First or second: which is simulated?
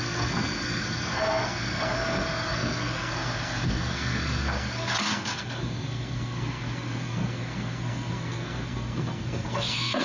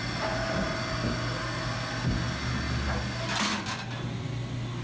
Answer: first